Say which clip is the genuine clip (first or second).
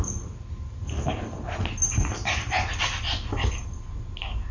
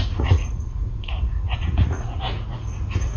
first